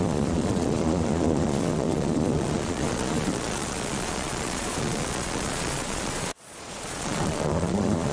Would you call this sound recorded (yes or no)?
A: no